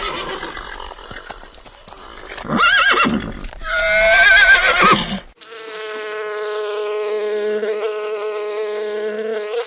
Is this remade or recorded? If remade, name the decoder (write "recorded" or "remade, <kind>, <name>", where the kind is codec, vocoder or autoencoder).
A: recorded